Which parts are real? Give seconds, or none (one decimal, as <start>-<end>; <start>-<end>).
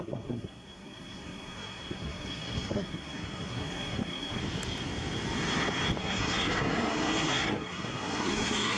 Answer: 4.4-6.0